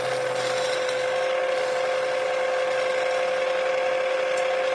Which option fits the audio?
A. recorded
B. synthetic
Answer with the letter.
A